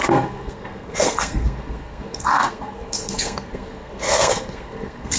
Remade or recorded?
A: remade